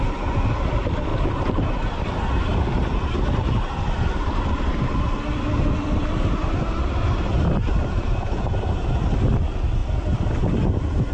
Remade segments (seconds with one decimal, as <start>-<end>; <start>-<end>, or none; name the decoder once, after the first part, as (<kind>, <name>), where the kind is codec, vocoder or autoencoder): none

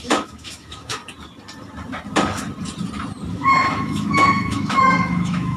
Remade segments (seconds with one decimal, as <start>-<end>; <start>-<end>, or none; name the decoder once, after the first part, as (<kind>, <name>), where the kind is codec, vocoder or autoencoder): 0.0-1.0 (autoencoder, DAC-VAE); 3.3-5.6

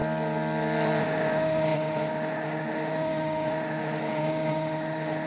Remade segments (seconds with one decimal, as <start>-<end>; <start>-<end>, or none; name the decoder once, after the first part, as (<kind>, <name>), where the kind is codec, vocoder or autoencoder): 1.0-5.3 (autoencoder, DAC-VAE)